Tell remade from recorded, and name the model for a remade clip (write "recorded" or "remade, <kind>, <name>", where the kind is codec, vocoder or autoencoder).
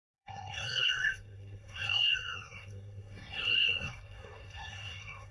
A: remade, codec, SNAC